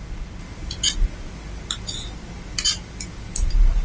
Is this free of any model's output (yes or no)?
yes